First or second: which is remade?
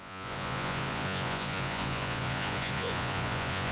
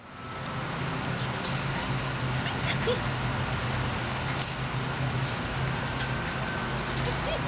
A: first